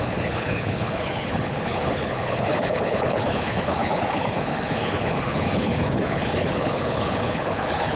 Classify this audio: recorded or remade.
remade